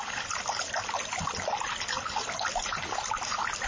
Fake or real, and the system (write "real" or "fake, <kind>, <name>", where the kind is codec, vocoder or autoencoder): fake, vocoder, BigVGAN v2